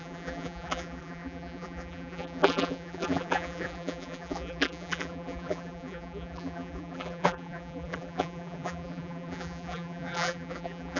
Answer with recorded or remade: remade